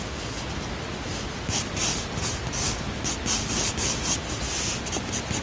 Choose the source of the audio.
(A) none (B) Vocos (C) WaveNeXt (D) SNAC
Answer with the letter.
A